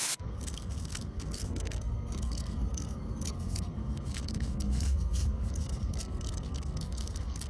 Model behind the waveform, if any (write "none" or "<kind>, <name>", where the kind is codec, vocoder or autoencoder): codec, SNAC